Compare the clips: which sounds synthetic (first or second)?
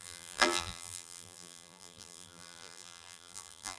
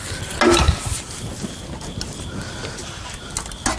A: first